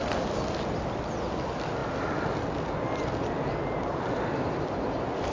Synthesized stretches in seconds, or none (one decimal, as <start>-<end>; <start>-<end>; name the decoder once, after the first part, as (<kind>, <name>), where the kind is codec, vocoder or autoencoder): none